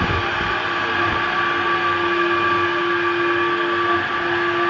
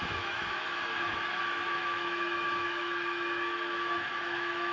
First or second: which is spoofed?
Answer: second